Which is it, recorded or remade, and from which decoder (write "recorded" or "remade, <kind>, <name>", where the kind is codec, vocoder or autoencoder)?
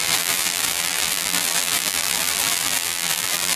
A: remade, vocoder, BigVGAN v2